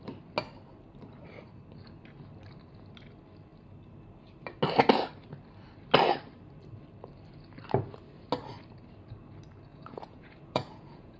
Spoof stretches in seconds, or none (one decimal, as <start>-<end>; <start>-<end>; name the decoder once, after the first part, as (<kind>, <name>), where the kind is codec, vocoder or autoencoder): 9.7-11.2 (vocoder, Vocos)